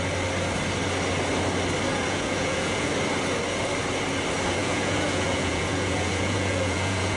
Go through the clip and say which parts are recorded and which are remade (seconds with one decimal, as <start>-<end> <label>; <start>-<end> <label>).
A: 0.0-1.9 recorded; 1.9-2.9 remade; 2.9-4.6 recorded; 4.6-7.2 remade